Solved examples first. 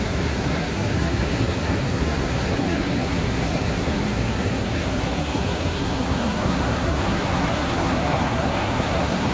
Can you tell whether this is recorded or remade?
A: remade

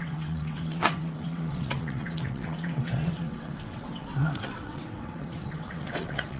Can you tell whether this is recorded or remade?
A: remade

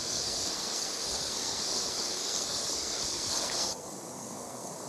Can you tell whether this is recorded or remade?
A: remade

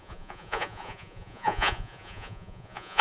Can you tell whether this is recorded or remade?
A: remade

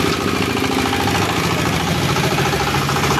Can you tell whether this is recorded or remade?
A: recorded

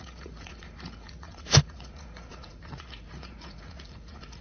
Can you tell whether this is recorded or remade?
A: remade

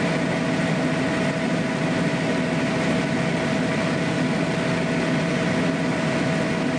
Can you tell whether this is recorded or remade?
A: recorded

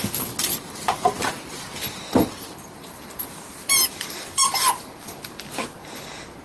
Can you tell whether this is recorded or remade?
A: remade